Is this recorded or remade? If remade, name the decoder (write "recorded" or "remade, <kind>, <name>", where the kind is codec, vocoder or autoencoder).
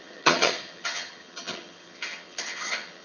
remade, vocoder, HiFi-GAN